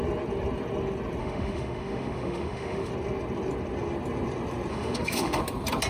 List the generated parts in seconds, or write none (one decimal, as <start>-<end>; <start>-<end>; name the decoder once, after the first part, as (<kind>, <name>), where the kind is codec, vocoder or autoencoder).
1.2-2.9 (autoencoder, DAC-VAE); 4.7-5.4